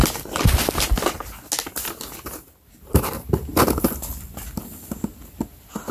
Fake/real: real